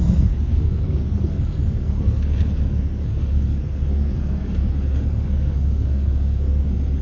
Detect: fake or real fake